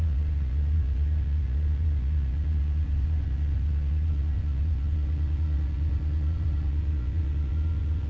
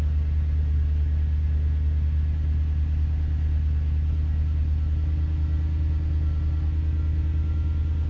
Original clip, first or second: second